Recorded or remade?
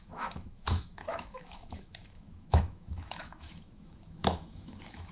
remade